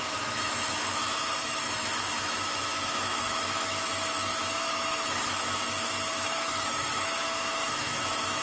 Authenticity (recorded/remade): remade